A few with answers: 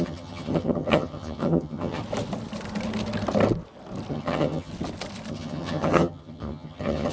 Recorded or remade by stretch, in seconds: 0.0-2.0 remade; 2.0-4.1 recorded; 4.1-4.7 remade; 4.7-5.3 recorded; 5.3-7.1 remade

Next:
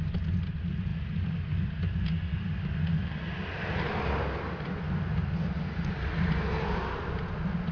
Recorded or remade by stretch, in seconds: 0.0-7.7 recorded

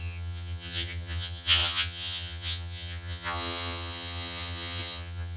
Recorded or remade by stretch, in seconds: 0.0-5.4 remade

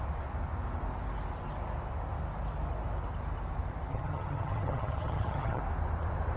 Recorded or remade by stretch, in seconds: 0.0-3.9 recorded; 3.9-5.6 remade; 5.6-6.4 recorded

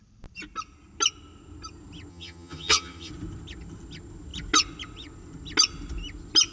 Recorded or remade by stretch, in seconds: 0.0-2.1 recorded; 2.1-3.1 remade; 3.1-6.5 recorded

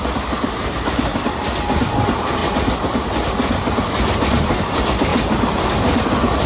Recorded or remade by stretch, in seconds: 0.0-6.5 recorded

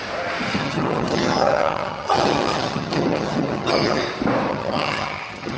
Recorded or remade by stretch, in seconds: 0.0-0.6 recorded; 0.6-4.0 remade; 4.0-4.5 recorded; 4.5-5.6 remade